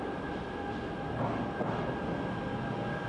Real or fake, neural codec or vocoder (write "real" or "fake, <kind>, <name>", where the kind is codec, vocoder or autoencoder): real